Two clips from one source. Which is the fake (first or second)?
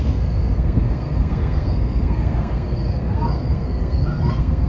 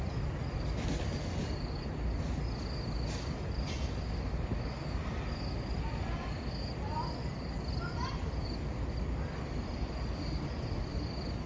first